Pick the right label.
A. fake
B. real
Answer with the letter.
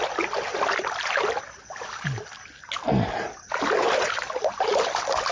B